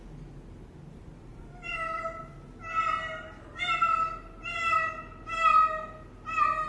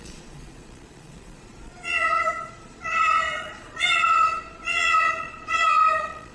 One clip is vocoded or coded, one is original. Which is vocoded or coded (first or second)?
second